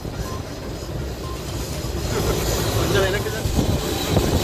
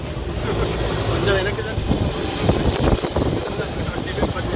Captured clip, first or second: second